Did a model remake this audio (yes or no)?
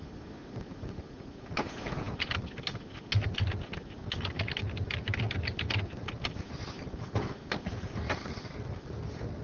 no